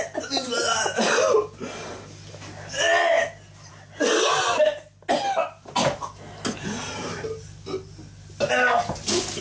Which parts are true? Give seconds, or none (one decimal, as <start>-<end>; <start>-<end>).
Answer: 0.0-9.4